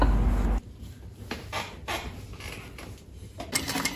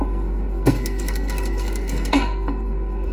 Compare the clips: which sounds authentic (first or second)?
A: first